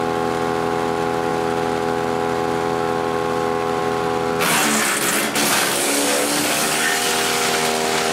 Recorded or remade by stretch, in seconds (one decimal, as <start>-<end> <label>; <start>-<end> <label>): 0.0-5.5 recorded; 5.5-7.1 remade; 7.1-8.1 recorded